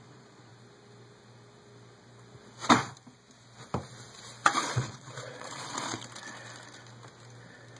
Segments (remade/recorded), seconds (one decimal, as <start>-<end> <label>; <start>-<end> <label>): 0.0-0.5 remade; 0.5-4.6 recorded; 4.6-6.0 remade; 6.0-7.8 recorded